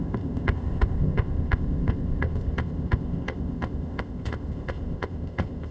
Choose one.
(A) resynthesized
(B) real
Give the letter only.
A